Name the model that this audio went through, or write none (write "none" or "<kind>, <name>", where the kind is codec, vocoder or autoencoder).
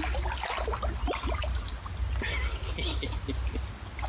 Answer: none